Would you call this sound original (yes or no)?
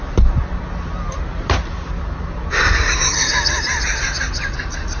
yes